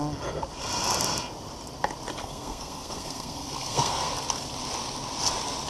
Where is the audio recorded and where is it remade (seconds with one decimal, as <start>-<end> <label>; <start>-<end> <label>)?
0.0-2.2 recorded; 2.2-4.1 remade; 4.1-5.7 recorded